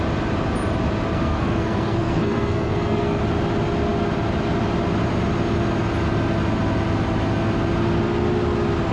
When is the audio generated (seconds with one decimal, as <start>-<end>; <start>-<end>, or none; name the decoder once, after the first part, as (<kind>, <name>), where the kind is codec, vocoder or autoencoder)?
1.1-3.2 (codec, SNAC)